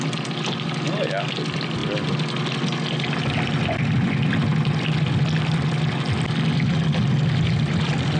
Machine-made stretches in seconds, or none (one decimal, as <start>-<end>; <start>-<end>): none